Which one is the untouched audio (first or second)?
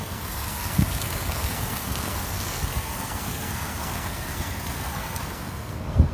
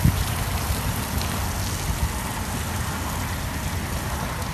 second